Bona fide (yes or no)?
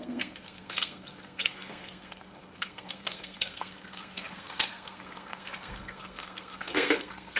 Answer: no